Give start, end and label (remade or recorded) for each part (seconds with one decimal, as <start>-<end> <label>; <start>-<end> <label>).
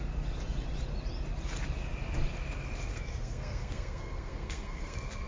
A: 0.0-2.9 recorded; 2.9-5.3 remade